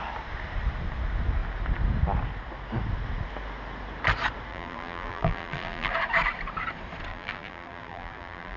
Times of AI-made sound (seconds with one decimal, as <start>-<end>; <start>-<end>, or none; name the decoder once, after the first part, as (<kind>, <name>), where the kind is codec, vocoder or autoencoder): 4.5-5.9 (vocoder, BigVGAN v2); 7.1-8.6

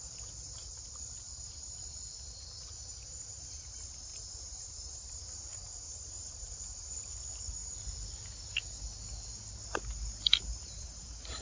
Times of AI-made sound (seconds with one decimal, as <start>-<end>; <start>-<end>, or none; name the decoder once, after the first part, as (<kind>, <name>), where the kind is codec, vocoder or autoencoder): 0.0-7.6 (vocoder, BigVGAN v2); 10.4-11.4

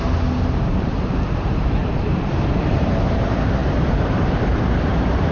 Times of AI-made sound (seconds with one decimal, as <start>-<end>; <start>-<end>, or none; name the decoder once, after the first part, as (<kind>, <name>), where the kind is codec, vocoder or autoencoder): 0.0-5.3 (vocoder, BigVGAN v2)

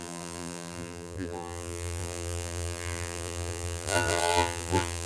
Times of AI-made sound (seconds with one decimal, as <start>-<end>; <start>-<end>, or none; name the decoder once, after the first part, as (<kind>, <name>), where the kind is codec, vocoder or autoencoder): 0.0-5.1 (vocoder, BigVGAN v2)